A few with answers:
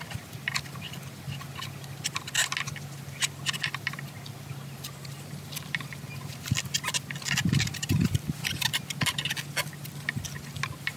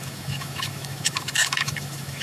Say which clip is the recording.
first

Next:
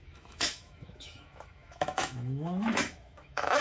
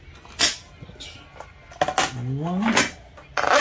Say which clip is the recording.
second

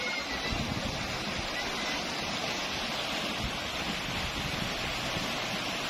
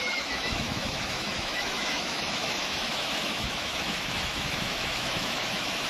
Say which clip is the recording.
first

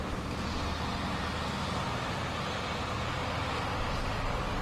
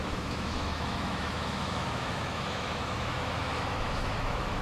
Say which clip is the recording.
first